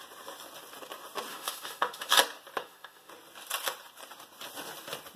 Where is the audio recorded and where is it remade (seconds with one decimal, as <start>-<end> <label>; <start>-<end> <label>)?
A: 0.0-1.3 recorded; 1.3-2.1 remade; 2.1-2.6 recorded; 2.6-3.1 remade; 3.1-5.2 recorded